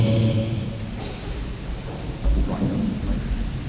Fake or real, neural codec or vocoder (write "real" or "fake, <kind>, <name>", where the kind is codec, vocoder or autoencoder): real